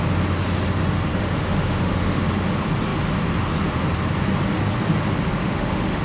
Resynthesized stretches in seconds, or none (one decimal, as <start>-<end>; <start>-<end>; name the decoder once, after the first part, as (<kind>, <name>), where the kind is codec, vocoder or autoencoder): 1.1-2.2 (autoencoder, DAC-VAE); 5.4-6.0